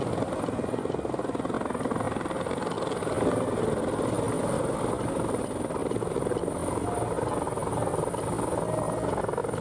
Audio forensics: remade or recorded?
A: recorded